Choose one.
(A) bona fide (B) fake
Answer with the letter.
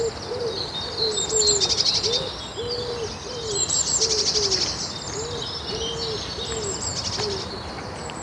A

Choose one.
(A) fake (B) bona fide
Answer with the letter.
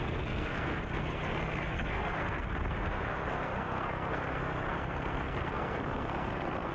A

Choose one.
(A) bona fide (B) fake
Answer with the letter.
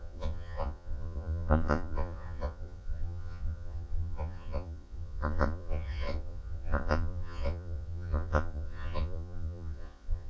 B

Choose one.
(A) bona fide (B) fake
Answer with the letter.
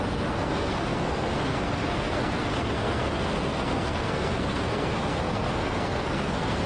B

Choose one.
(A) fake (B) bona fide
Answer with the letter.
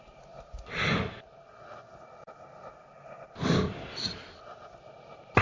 B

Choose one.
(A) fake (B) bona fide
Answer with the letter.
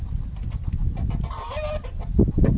B